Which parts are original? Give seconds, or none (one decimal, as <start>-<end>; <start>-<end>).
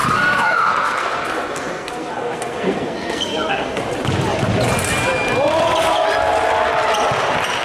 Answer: 3.8-7.6